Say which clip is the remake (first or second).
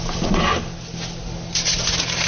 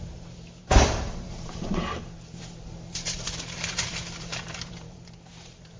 second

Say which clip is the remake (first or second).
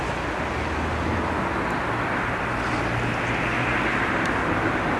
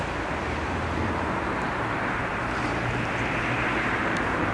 second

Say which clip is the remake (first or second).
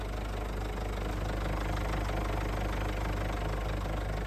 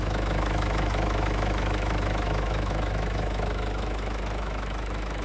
second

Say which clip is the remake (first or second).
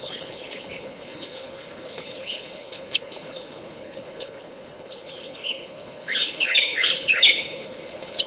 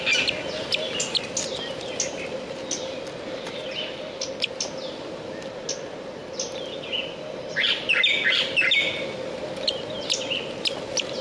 first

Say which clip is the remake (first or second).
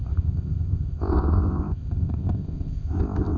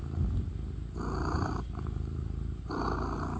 first